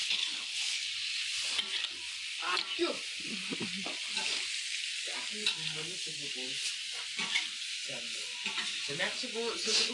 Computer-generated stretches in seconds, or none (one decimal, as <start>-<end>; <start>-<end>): 0.0-0.8